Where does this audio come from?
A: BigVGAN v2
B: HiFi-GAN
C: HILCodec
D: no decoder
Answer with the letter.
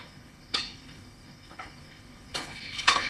C